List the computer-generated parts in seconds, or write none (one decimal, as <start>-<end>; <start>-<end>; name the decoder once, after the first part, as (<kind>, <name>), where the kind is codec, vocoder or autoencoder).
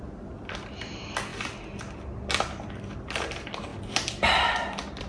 none